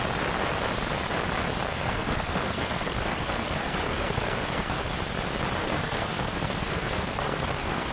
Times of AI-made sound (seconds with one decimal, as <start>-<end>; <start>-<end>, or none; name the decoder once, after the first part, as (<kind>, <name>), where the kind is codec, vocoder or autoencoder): 1.7-4.9 (codec, SNAC); 5.6-7.9